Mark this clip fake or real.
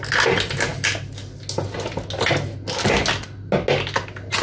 real